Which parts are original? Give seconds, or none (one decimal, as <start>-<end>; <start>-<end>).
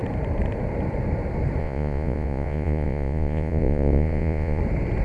0.0-1.6; 4.6-5.0